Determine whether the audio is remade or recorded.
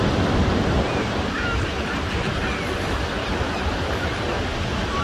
recorded